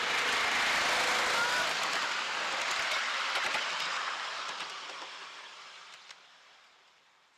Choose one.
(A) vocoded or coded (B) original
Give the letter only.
B